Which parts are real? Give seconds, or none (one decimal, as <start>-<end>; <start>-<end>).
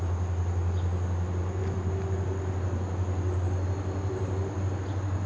0.0-5.3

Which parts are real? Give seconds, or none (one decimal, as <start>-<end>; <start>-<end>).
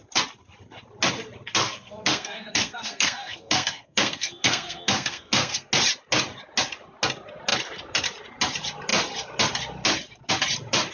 0.0-1.6; 5.7-10.9